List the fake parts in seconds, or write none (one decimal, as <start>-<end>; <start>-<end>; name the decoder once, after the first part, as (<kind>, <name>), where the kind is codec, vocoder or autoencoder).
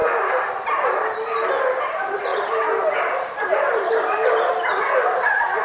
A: none